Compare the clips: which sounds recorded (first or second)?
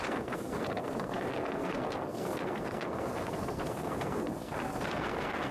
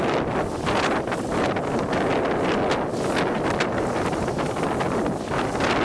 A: second